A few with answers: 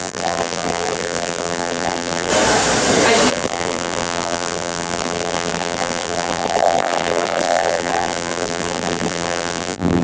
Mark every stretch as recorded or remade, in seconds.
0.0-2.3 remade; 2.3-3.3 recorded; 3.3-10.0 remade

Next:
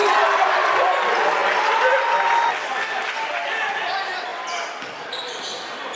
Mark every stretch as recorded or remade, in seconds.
0.0-0.6 recorded; 0.6-1.4 remade; 1.4-3.0 recorded; 3.0-6.0 remade